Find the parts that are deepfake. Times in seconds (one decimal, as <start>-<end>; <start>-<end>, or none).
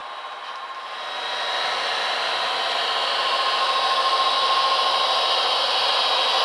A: none